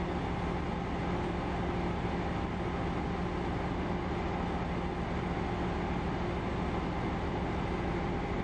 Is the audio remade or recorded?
recorded